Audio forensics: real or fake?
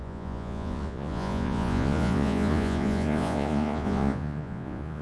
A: fake